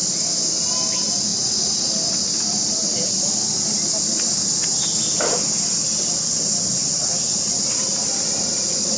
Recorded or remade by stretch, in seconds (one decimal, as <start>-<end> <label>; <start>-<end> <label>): 0.0-0.7 remade; 0.7-9.0 recorded